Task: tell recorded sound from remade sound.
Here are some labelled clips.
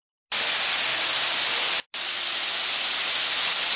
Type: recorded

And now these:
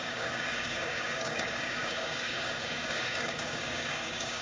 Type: remade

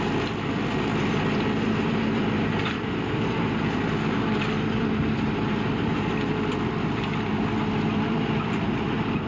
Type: remade